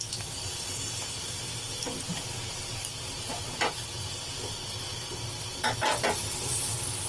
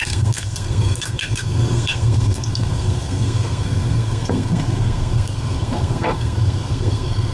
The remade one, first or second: second